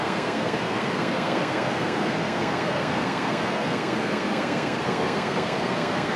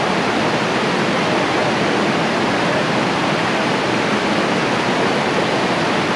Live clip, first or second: second